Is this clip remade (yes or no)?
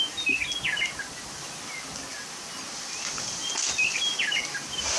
no